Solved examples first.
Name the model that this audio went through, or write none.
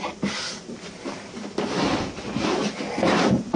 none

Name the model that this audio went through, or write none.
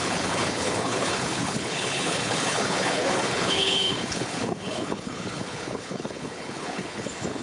codec, HILCodec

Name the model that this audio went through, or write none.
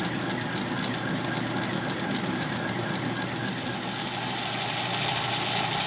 none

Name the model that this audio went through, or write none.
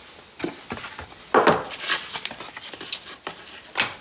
none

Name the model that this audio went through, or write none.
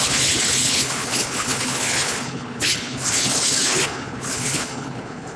codec, HILCodec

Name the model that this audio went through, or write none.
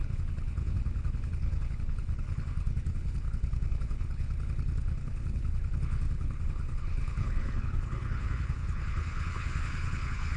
codec, HILCodec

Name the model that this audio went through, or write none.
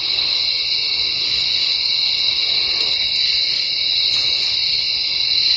none